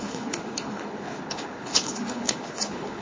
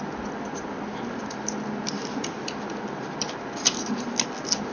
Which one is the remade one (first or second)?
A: first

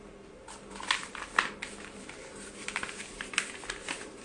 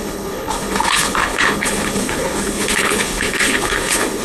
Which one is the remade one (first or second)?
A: second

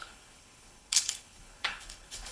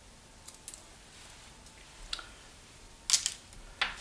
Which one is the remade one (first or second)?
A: first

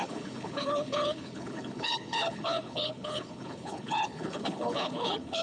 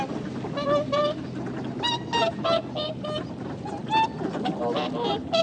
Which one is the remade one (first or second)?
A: first